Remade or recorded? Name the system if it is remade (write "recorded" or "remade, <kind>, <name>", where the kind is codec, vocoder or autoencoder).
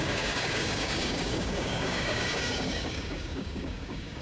remade, codec, DAC